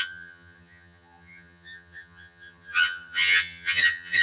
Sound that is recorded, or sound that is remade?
remade